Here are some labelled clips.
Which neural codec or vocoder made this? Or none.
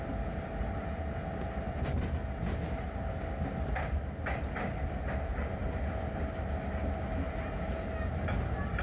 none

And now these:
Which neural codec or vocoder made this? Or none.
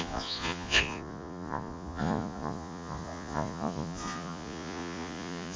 vocoder, Vocos